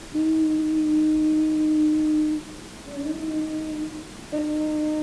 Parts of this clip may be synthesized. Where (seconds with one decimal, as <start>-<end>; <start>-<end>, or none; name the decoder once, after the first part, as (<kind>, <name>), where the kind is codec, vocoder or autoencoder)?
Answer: none